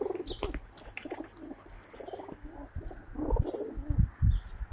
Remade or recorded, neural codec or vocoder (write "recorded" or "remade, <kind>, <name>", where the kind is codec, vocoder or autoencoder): recorded